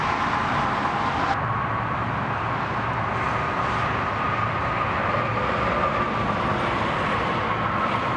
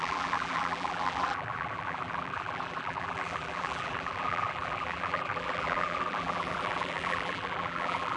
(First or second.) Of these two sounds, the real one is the first